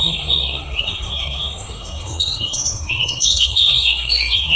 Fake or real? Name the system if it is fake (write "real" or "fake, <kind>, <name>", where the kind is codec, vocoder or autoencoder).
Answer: fake, codec, SNAC